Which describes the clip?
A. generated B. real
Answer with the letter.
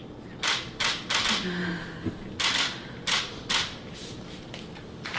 B